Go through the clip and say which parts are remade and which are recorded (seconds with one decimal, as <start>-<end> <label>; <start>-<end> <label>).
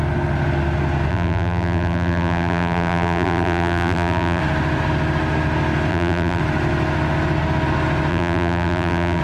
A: 0.0-1.1 recorded; 1.1-4.4 remade; 4.4-5.9 recorded; 5.9-6.4 remade; 6.4-8.1 recorded; 8.1-9.2 remade